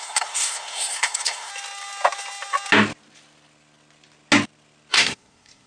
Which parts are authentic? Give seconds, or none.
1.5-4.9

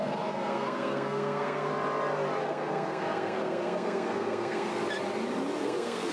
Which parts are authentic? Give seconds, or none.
1.7-2.4; 4.7-5.6

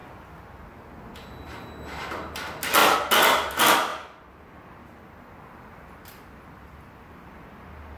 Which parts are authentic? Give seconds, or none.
0.0-3.9; 5.4-8.0

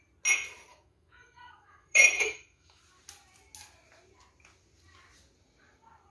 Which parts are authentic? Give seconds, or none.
0.0-0.7; 2.8-6.1

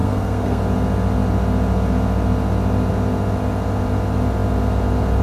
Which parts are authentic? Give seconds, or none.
0.6-5.2

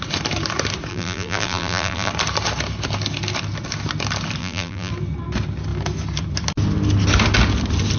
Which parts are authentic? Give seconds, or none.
0.0-0.9; 2.1-4.4; 4.9-8.0

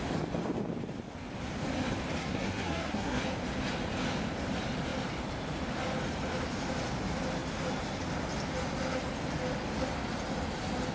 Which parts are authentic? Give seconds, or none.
0.0-2.2; 3.2-10.9

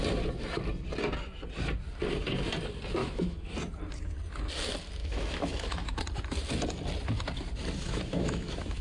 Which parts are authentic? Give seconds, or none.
0.0-3.0; 3.5-5.0; 6.0-7.8